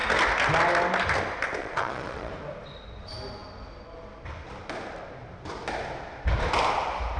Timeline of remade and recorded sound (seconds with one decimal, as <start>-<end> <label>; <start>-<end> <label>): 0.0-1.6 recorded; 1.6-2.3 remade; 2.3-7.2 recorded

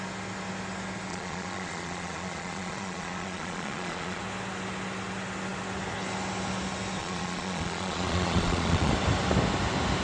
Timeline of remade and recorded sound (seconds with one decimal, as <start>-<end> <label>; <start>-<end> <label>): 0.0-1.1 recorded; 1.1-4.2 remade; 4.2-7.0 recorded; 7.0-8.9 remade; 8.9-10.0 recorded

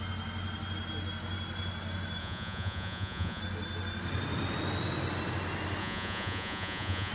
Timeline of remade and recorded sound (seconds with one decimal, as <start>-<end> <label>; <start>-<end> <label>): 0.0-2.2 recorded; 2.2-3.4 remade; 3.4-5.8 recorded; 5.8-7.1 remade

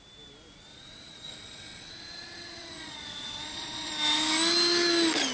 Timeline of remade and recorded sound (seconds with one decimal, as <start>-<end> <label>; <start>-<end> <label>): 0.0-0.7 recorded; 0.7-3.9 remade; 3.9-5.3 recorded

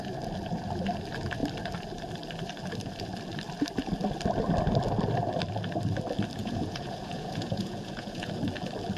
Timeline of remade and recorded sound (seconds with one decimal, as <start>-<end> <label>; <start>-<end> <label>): 0.0-6.4 recorded; 6.4-8.3 remade; 8.3-9.0 recorded